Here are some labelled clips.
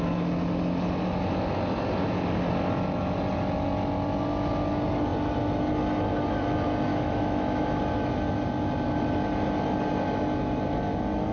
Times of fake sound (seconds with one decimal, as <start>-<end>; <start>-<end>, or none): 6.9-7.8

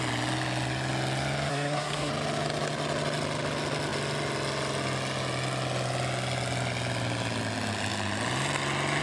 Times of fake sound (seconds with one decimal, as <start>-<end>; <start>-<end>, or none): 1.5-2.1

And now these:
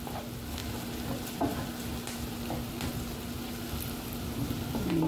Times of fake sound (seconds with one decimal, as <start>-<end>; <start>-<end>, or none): none

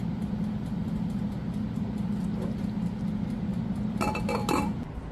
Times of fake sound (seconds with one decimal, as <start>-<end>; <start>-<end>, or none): none